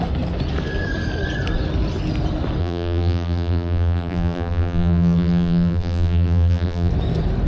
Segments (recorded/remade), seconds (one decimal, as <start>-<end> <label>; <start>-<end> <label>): 0.0-2.6 recorded; 2.6-6.9 remade; 6.9-7.5 recorded